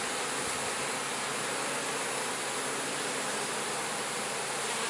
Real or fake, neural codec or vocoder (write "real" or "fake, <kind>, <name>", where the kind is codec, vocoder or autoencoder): real